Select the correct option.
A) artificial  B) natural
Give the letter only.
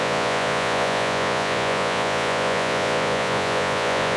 A